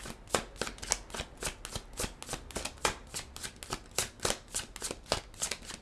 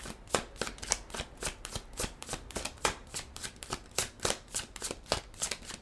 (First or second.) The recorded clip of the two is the first